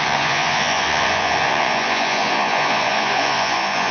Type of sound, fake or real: fake